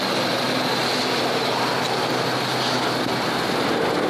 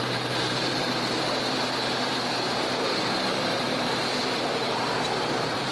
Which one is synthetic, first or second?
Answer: second